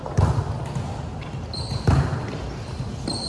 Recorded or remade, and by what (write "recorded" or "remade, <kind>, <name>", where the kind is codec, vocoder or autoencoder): recorded